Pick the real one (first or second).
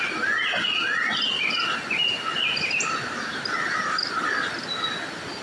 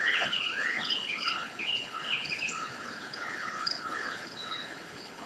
first